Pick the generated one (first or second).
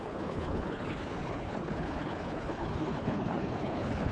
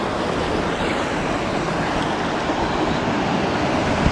first